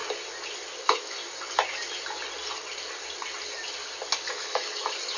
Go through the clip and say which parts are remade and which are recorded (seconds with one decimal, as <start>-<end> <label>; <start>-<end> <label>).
0.0-0.7 recorded; 0.7-1.2 remade; 1.2-4.3 recorded; 4.3-5.2 remade